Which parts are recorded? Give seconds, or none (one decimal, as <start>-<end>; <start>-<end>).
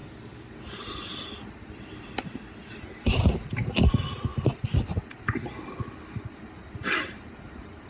0.0-7.9